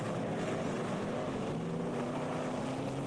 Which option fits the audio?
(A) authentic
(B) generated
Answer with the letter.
A